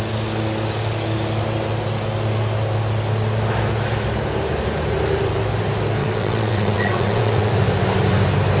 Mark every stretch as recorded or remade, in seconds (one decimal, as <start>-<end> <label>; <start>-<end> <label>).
0.0-6.0 recorded; 6.0-7.5 remade; 7.5-8.6 recorded